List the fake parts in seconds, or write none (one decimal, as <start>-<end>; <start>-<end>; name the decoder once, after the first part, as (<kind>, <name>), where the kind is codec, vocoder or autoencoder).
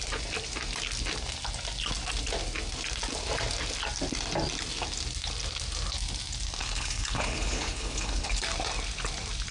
6.6-8.4 (codec, HILCodec)